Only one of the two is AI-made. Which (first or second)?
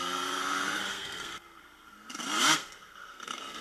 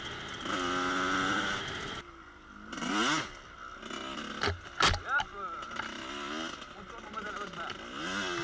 first